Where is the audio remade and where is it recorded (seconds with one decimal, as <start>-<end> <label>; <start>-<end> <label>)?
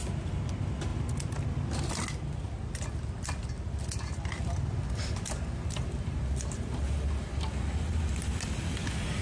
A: 0.0-9.2 recorded